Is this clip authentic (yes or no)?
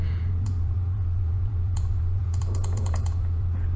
no